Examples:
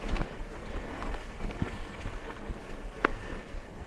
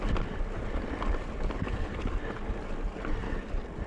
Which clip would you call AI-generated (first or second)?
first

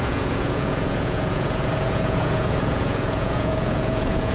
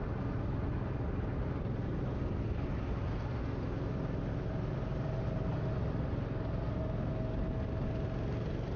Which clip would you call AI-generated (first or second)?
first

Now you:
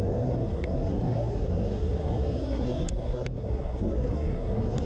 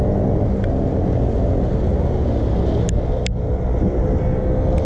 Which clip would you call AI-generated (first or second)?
first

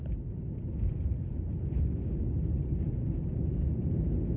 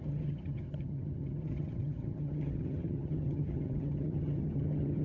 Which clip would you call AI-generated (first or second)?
second